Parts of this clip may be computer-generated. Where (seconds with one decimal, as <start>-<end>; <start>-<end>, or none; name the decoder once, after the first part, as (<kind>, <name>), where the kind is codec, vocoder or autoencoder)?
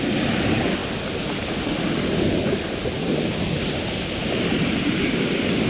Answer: none